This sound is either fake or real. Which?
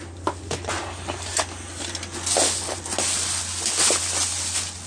real